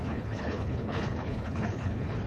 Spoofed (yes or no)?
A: yes